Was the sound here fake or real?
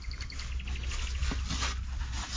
real